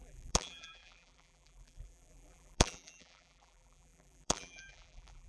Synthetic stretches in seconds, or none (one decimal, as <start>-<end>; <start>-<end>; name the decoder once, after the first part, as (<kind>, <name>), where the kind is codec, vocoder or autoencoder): 0.0-5.3 (vocoder, BigVGAN v2)

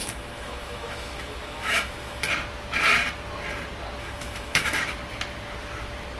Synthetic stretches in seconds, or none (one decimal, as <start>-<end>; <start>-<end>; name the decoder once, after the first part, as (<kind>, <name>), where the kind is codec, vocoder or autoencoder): 0.0-2.3 (autoencoder, DAC-VAE); 4.0-4.8